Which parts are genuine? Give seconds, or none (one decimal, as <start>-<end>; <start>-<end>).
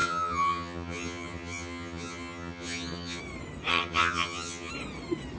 3.2-3.7; 4.7-5.4